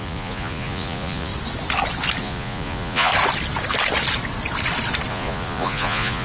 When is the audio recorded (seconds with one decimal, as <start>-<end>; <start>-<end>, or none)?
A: 1.3-2.2; 3.1-5.1